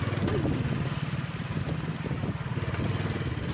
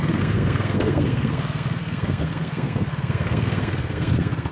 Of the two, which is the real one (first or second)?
first